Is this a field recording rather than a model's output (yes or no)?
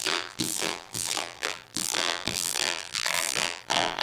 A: no